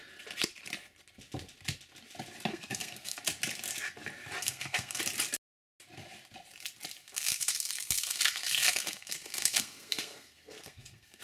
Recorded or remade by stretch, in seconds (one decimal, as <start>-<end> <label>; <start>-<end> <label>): 0.0-2.5 recorded; 2.5-3.2 remade; 3.2-4.4 recorded; 4.4-5.0 remade; 5.0-7.0 recorded; 7.0-11.2 remade